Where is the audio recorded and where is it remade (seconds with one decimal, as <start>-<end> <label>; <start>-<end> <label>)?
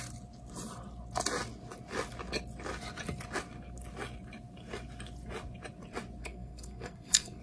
0.0-6.2 recorded; 6.2-7.4 remade